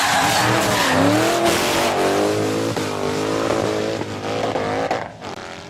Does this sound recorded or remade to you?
recorded